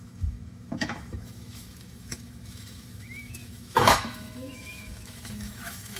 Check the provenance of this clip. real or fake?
fake